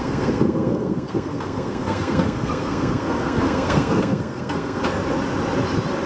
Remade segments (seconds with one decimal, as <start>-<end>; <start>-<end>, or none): 0.0-4.8